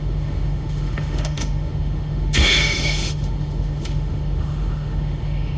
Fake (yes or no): yes